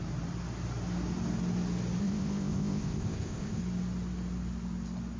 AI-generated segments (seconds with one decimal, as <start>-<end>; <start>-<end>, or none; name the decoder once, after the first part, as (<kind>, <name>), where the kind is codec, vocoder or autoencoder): 2.0-3.6 (codec, ZipCodec)